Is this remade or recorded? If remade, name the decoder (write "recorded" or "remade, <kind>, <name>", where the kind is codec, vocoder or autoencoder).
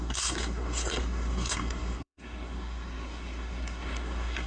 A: remade, codec, SNAC